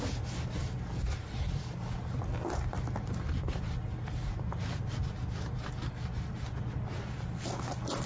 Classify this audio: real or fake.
real